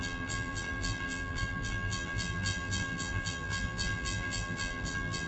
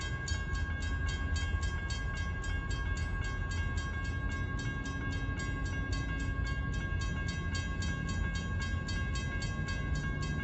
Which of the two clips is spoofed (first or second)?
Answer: first